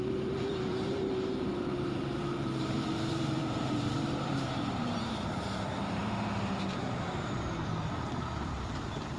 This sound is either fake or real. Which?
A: fake